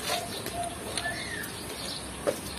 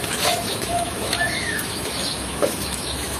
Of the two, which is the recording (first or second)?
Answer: first